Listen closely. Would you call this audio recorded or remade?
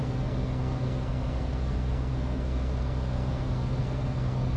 remade